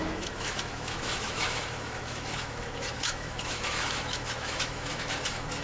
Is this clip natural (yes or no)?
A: no